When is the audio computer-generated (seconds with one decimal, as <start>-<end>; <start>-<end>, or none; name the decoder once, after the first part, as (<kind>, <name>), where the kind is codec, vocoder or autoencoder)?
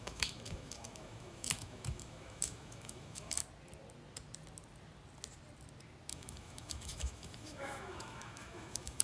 0.0-3.4 (autoencoder, DAC-VAE); 6.1-9.0